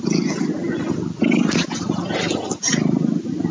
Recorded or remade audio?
recorded